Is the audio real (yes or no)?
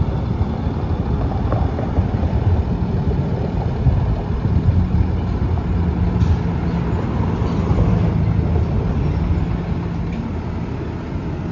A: yes